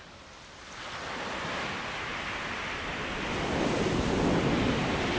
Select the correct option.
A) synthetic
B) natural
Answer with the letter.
B